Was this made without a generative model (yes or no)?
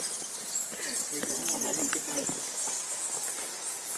yes